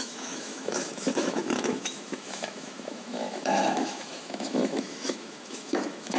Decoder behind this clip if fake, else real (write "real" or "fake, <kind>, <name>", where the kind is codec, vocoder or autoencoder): fake, autoencoder, DAC-VAE